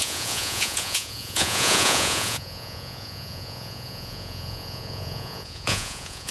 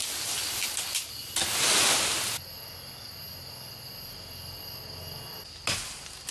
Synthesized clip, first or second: first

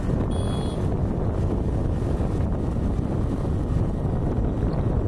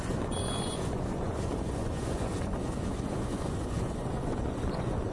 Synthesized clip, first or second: second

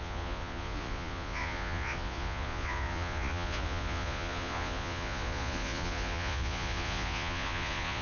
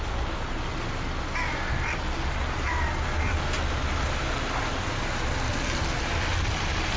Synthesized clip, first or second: first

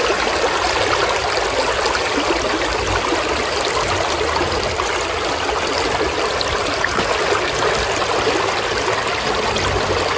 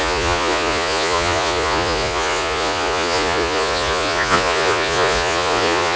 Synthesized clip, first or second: second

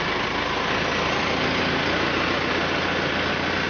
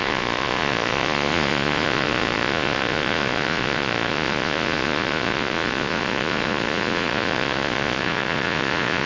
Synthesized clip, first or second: second